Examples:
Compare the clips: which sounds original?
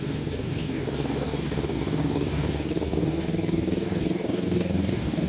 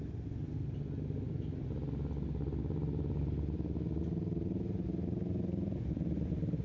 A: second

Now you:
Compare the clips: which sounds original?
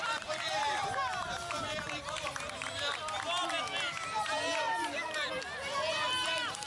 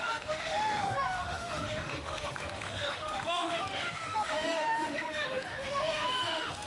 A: first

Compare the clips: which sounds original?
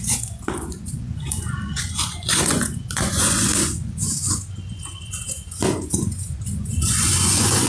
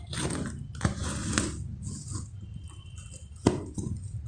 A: second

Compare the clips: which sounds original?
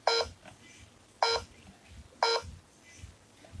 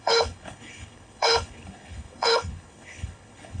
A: first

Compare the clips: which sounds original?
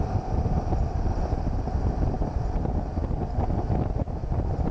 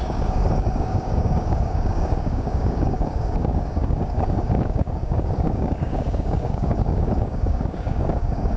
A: first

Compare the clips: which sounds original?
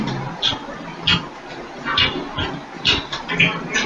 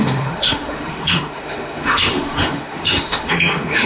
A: first